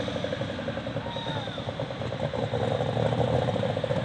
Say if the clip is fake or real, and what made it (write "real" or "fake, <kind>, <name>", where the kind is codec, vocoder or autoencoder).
real